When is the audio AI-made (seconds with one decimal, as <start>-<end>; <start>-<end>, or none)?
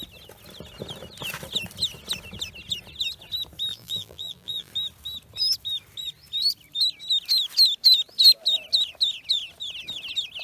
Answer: 3.7-4.7